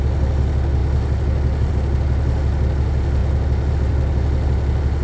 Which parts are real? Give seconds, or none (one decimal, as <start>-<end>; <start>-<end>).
0.0-5.0